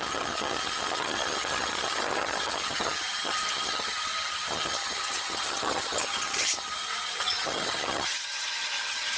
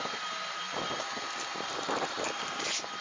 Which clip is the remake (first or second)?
first